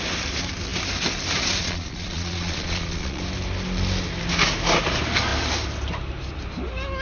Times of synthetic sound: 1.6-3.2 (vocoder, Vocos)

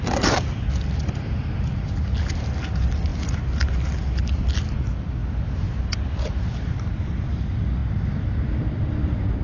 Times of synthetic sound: none